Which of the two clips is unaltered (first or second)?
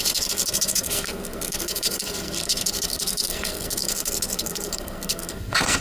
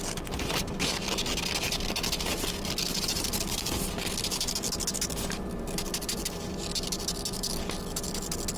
second